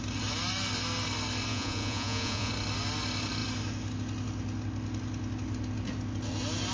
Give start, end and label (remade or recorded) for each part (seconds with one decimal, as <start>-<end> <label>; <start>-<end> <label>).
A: 0.0-1.5 recorded; 1.5-2.5 remade; 2.5-6.7 recorded